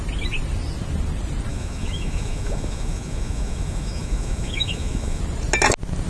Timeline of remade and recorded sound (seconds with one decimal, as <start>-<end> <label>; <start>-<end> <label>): 0.0-1.5 recorded; 1.5-5.2 remade; 5.2-6.1 recorded